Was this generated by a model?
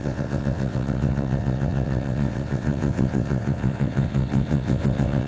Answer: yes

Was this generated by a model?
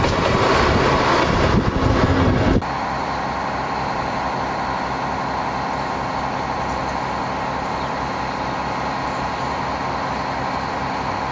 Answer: no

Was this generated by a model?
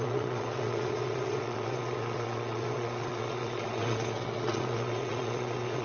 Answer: yes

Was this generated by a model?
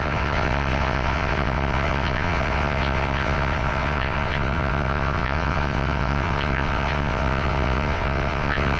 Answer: yes